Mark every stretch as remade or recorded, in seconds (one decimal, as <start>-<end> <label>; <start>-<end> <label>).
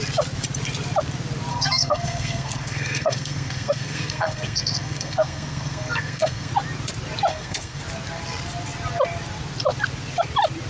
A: 0.0-1.5 recorded; 1.5-6.5 remade; 6.5-7.3 recorded; 7.3-7.8 remade; 7.8-10.7 recorded